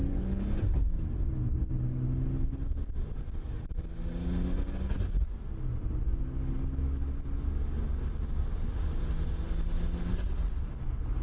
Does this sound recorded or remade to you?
recorded